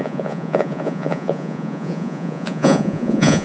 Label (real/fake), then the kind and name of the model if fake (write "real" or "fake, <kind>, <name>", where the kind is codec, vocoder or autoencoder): fake, vocoder, Vocos